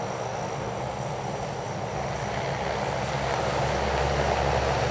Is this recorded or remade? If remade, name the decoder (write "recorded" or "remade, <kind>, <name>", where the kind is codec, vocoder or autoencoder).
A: recorded